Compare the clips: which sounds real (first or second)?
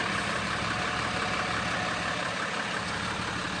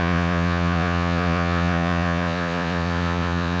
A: first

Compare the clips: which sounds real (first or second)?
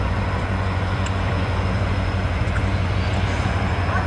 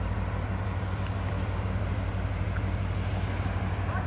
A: second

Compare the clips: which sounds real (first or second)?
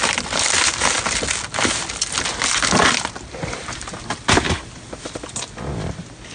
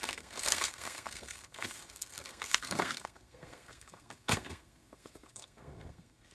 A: first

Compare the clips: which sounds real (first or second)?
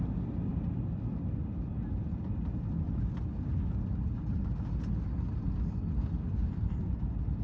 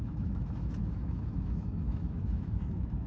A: first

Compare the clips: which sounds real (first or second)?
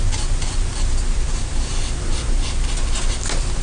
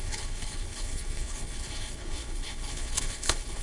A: first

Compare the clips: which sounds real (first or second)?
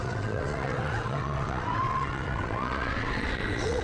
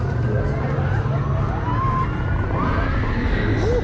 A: second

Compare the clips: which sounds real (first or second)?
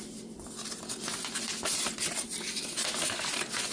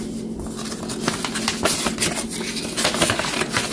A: second